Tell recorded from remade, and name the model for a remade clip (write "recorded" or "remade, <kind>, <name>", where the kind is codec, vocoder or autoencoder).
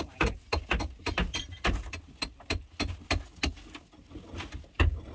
recorded